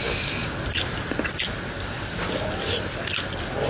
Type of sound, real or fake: real